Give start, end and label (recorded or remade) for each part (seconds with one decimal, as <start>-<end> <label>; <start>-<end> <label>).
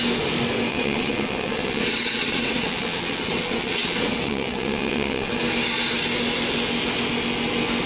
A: 0.0-0.7 recorded; 0.7-5.4 remade; 5.4-7.9 recorded